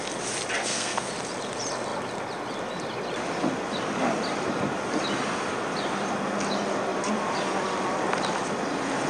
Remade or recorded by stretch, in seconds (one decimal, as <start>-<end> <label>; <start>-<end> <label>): 0.0-0.6 recorded; 0.6-1.1 remade; 1.1-9.1 recorded